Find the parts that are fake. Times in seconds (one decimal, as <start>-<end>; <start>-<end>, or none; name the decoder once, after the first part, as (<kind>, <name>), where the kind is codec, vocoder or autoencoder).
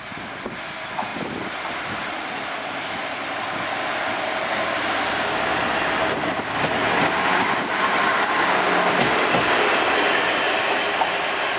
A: none